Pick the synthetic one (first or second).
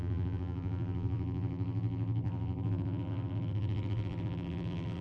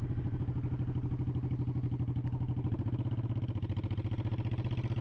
first